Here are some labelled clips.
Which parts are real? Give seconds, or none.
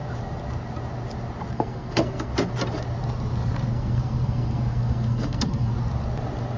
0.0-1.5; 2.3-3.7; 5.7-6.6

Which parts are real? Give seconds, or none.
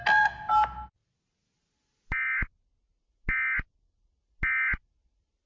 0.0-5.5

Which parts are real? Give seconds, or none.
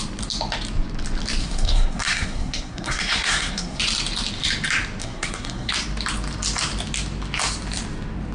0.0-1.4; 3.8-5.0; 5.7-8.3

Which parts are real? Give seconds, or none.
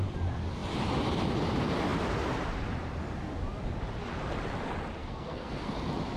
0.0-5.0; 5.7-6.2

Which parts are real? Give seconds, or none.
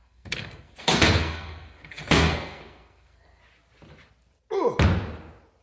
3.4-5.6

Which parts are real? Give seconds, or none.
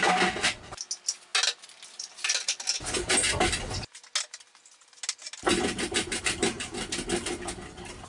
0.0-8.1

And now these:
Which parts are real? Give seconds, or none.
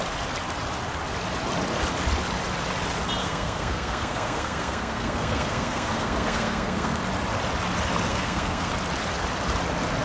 0.0-3.2; 7.0-8.1; 8.7-10.0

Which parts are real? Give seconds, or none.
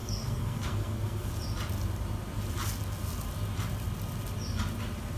1.3-5.2